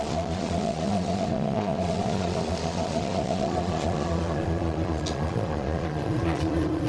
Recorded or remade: remade